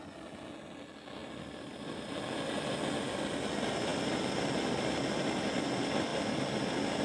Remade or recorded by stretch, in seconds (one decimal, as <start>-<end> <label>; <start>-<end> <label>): 0.0-7.0 recorded